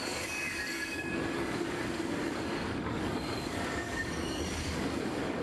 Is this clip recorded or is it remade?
remade